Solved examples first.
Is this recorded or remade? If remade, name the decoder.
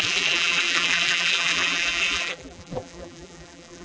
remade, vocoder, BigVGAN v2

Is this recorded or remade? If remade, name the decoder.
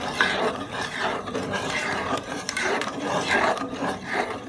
remade, vocoder, BigVGAN v2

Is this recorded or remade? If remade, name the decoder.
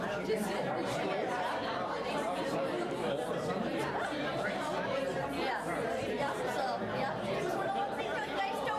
remade, vocoder, BigVGAN v2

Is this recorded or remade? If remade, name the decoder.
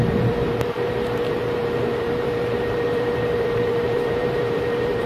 remade, vocoder, BigVGAN v2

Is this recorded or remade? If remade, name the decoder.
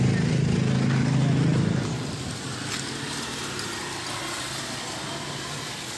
recorded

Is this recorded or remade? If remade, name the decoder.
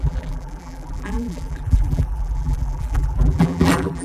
remade, vocoder, BigVGAN v2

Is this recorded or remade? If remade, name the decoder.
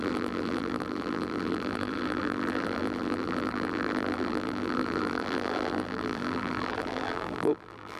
remade, vocoder, BigVGAN v2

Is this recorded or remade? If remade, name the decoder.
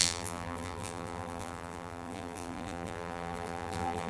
remade, vocoder, BigVGAN v2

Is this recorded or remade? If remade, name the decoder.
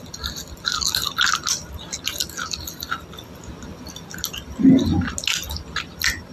recorded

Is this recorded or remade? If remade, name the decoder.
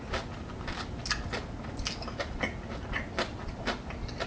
recorded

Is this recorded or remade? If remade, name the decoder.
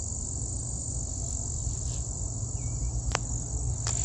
recorded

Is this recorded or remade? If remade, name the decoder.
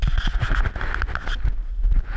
recorded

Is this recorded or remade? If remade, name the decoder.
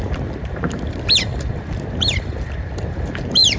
remade, vocoder, BigVGAN v2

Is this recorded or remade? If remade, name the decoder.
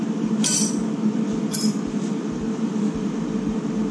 remade, vocoder, BigVGAN v2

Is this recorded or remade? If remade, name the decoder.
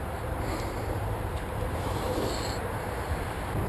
remade, vocoder, BigVGAN v2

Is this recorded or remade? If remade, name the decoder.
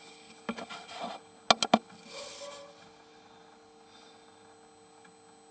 recorded